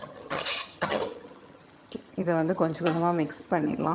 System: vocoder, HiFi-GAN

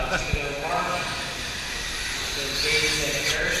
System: none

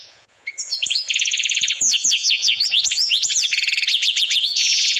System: vocoder, Vocos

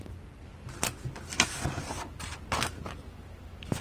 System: none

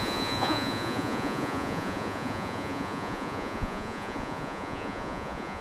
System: vocoder, Vocos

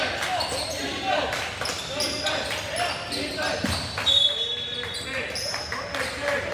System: none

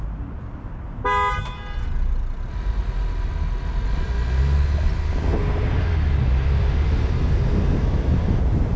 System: none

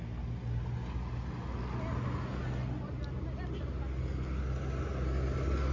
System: none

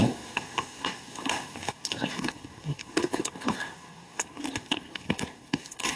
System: codec, SNAC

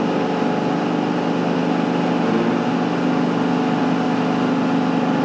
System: none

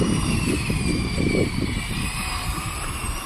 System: vocoder, BigVGAN v2